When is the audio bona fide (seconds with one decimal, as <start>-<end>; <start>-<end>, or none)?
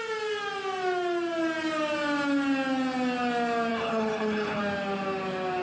0.0-3.7; 4.6-5.6